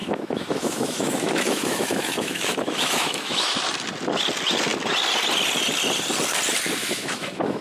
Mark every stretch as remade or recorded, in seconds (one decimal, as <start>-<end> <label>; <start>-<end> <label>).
0.0-3.5 remade; 3.5-6.8 recorded; 6.8-7.6 remade